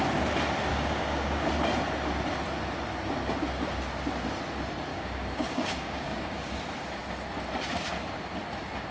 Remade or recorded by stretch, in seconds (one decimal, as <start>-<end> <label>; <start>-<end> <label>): 0.0-0.7 recorded; 0.7-1.5 remade; 1.5-4.9 recorded; 4.9-6.6 remade; 6.6-8.9 recorded